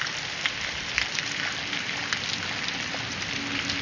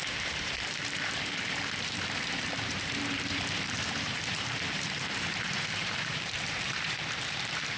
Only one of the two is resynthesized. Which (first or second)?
second